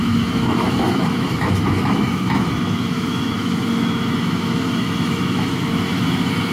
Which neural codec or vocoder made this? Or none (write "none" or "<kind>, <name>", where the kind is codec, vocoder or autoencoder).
autoencoder, DAC-VAE